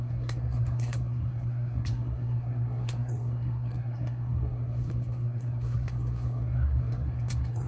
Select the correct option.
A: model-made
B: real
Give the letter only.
A